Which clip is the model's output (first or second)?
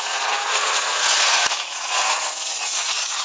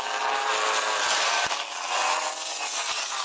first